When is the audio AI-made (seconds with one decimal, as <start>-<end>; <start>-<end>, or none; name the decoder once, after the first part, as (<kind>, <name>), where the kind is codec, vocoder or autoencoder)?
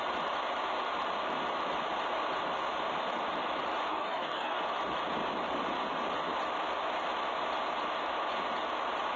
3.9-4.6 (codec, DAC)